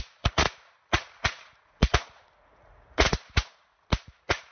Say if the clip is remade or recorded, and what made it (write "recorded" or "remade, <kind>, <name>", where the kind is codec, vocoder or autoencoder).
remade, vocoder, Vocos